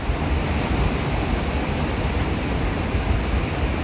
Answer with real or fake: real